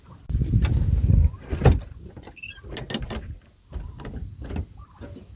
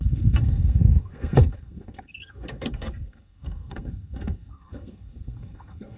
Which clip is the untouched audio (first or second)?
first